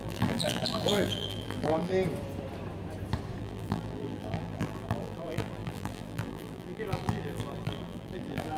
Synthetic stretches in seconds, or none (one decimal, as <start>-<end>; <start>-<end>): 0.0-1.9; 3.4-8.6